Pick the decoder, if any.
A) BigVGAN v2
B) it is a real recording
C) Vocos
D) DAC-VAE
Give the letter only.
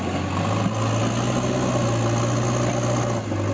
B